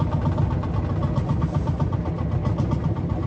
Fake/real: real